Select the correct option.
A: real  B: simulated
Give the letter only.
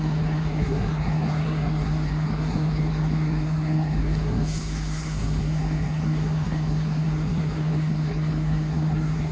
B